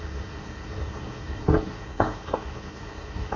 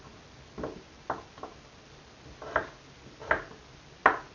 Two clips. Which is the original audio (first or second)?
second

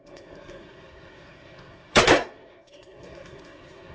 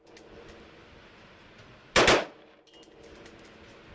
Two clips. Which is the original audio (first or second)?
second